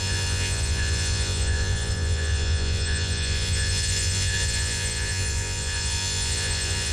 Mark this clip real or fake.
fake